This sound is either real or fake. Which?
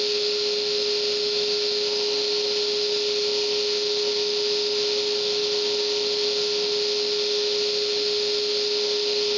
fake